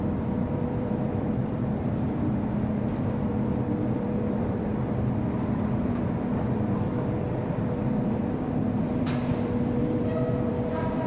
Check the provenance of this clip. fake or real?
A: fake